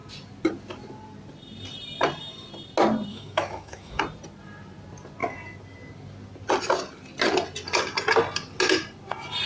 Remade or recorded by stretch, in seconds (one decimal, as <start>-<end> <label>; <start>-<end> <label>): 0.0-3.1 recorded; 3.1-4.0 remade; 4.0-9.5 recorded